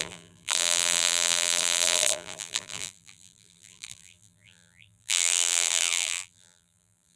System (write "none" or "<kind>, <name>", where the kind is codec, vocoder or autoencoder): vocoder, BigVGAN v2